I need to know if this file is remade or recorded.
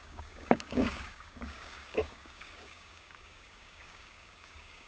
remade